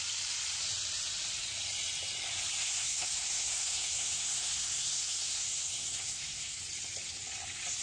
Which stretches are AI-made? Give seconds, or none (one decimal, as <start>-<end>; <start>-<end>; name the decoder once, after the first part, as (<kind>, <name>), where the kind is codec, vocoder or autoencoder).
2.6-6.6 (codec, SNAC)